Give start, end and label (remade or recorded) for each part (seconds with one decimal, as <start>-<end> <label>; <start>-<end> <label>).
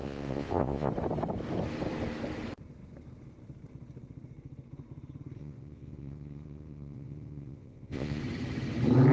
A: 0.0-0.9 remade; 0.9-5.4 recorded; 5.4-8.2 remade; 8.2-9.1 recorded